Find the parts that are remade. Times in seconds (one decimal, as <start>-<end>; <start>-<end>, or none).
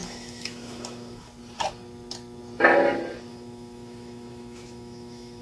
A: 0.0-1.3; 3.3-5.4